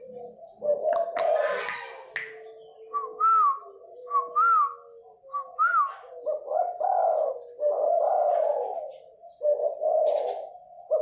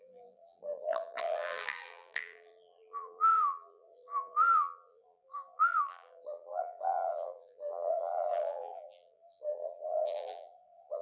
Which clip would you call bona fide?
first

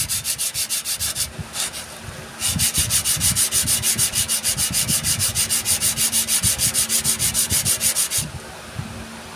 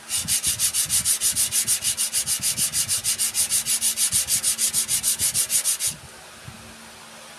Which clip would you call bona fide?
second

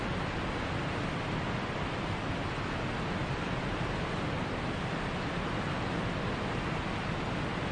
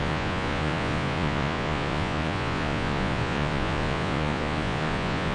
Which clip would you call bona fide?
first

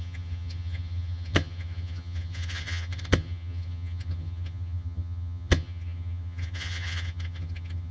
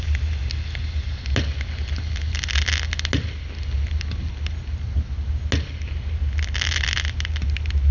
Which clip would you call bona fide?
second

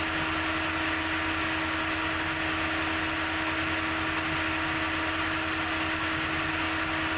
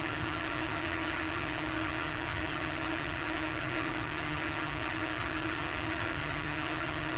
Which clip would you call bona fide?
first